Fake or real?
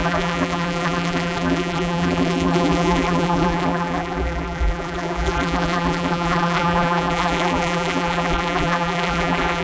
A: fake